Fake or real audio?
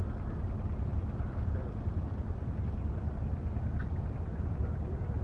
real